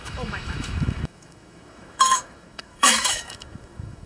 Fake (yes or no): yes